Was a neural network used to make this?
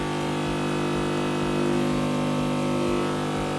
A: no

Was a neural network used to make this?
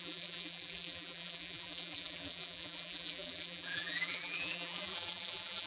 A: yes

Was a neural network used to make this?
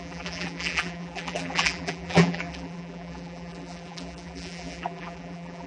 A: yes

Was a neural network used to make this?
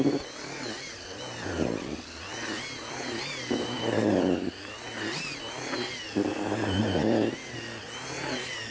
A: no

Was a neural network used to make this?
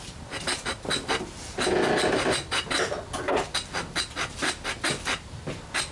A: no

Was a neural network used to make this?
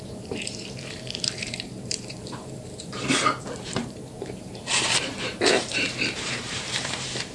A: yes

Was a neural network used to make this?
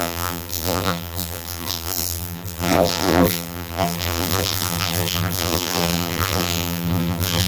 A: yes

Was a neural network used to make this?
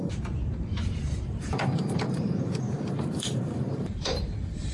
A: yes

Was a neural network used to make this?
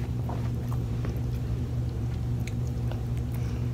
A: yes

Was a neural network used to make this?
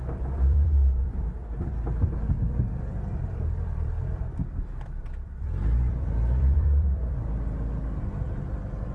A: yes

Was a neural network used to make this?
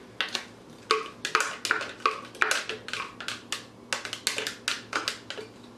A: no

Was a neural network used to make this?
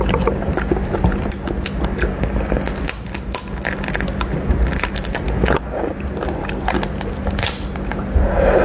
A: no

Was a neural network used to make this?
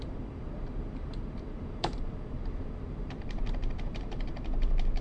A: yes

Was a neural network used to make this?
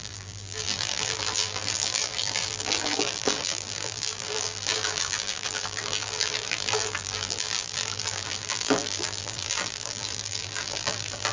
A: yes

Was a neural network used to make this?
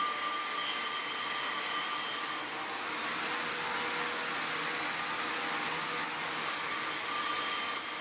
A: no